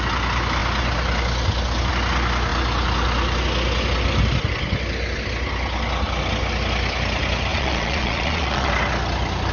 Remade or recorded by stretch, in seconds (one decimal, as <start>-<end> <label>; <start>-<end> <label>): 0.0-7.5 recorded; 7.5-8.7 remade; 8.7-9.5 recorded

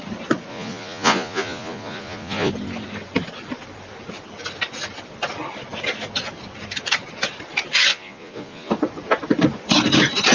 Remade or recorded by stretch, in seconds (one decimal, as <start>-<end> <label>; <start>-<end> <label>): 0.0-0.5 recorded; 0.5-2.5 remade; 2.5-7.9 recorded; 7.9-8.7 remade; 8.7-10.3 recorded

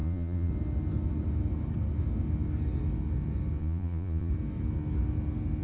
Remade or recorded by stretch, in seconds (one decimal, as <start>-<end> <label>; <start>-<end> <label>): 0.0-0.5 remade; 0.5-3.6 recorded; 3.6-4.3 remade; 4.3-5.6 recorded

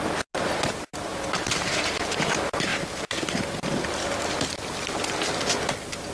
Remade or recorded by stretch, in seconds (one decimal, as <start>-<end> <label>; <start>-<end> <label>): 0.0-6.1 recorded

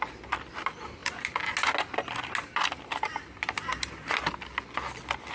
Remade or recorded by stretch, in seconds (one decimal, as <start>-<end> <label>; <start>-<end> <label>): 0.0-5.3 recorded

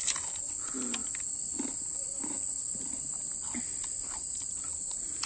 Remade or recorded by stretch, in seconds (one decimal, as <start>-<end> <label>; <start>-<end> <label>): 0.0-5.3 recorded

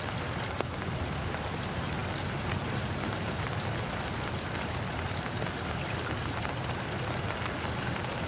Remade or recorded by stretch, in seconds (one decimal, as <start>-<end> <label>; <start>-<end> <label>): 0.0-8.3 recorded